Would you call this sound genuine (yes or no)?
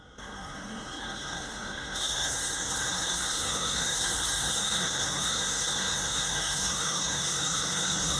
no